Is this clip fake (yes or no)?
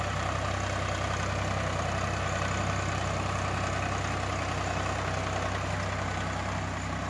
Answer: no